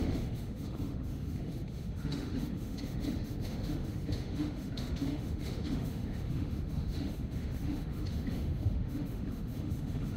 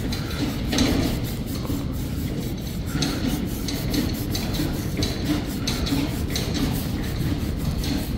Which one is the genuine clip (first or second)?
second